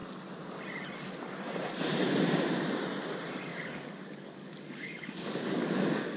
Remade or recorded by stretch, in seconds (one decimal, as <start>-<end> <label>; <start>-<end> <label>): 0.0-3.5 recorded; 3.5-6.2 remade